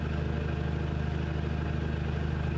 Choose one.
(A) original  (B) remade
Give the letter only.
A